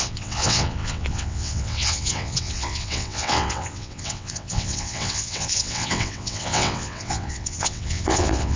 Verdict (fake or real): fake